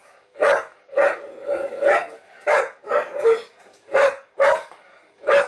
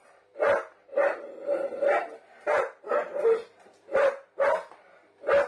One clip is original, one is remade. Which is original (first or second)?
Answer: second